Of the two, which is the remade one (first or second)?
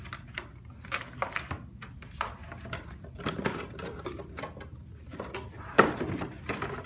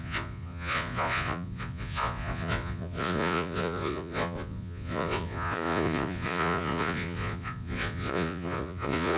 second